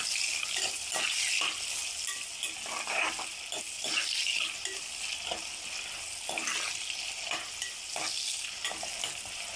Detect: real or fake real